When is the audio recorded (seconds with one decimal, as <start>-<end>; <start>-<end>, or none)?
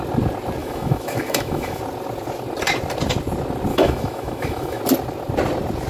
0.0-0.6; 1.8-3.7; 4.8-5.9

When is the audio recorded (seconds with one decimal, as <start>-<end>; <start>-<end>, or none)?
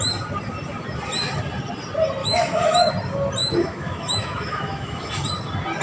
0.0-2.2; 2.9-3.4; 5.1-5.8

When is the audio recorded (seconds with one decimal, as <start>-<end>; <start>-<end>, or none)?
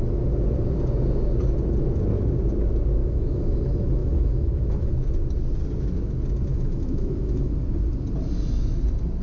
0.0-3.0; 3.6-4.0; 4.9-6.5; 7.5-9.2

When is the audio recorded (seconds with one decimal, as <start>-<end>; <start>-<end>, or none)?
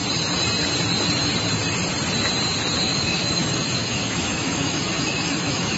0.0-2.8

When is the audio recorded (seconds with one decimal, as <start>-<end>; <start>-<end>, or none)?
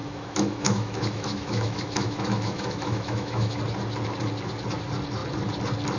3.6-6.0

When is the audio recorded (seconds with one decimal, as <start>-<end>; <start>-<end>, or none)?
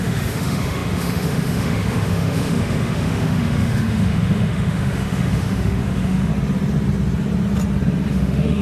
6.3-8.1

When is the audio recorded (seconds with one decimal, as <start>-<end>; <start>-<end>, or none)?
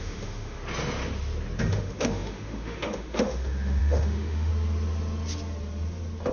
0.6-1.6; 4.5-6.3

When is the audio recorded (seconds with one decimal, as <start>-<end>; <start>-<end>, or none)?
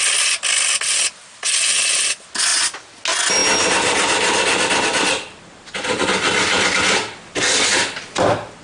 0.0-8.6